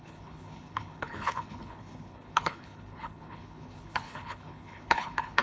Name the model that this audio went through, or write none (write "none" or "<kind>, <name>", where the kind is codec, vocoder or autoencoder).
codec, HILCodec